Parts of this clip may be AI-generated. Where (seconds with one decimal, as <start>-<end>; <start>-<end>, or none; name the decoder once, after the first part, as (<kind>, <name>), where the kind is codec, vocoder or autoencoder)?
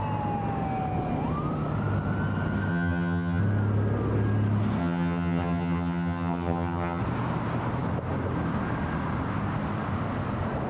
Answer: 2.7-3.4 (vocoder, HiFi-GAN); 4.8-7.0